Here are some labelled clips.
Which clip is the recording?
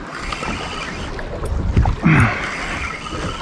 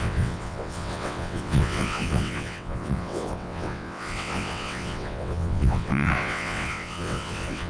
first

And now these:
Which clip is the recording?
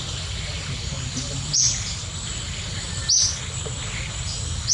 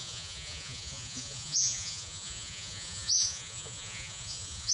first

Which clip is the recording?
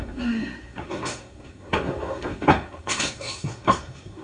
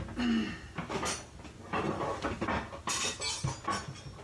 second